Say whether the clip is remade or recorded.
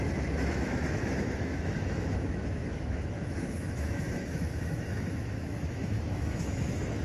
remade